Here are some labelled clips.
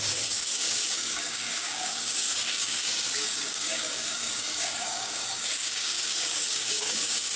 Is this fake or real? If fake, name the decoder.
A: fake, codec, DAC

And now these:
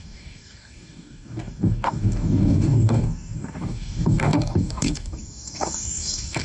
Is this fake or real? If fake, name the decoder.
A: fake, codec, DAC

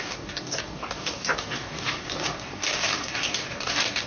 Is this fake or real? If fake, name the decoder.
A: fake, codec, DAC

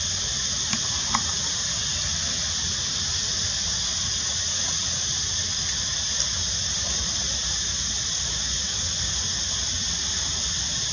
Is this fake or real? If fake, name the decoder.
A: real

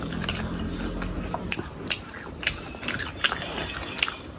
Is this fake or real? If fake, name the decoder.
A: real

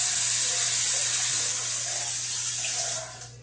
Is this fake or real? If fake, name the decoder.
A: real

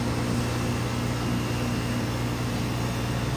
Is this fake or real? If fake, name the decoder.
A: real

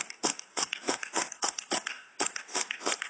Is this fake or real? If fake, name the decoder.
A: fake, codec, DAC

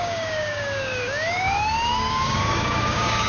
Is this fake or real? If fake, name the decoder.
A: fake, codec, DAC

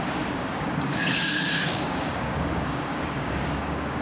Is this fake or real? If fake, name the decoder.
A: fake, codec, DAC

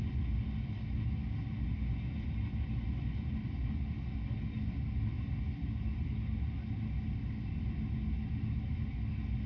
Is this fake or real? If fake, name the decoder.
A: real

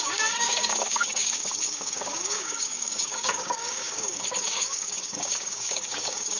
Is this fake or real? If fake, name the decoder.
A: fake, codec, DAC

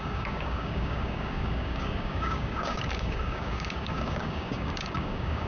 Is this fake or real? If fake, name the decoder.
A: fake, codec, DAC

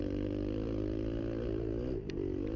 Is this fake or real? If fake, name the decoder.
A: real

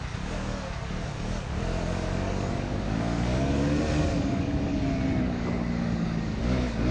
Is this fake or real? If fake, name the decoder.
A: fake, codec, DAC